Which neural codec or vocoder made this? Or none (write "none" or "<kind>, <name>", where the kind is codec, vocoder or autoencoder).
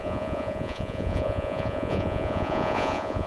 vocoder, Vocos